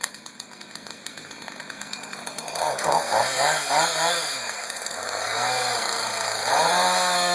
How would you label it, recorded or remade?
remade